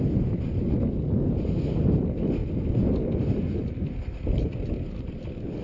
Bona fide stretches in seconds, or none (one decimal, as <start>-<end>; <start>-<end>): 0.0-5.6